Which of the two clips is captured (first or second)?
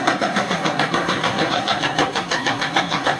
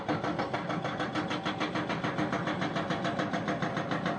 second